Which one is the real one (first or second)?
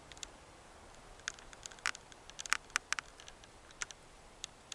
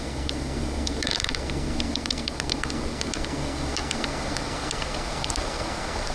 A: first